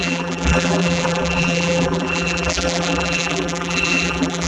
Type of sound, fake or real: fake